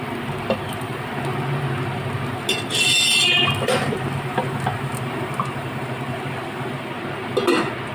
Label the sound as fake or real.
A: real